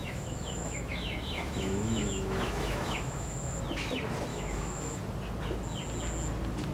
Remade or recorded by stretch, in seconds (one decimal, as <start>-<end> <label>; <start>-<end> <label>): 0.0-3.6 remade; 3.6-4.3 recorded; 4.3-5.0 remade; 5.0-6.7 recorded